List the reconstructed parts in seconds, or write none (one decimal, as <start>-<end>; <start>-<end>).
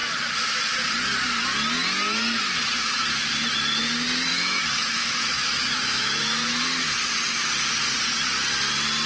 4.3-6.6